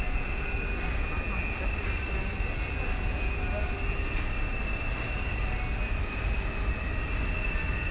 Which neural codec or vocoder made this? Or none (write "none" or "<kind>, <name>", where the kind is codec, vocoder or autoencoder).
none